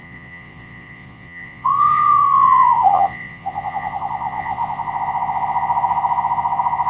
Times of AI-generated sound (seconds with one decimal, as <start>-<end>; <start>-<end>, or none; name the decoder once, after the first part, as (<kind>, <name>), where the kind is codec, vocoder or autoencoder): 0.0-6.9 (vocoder, Vocos)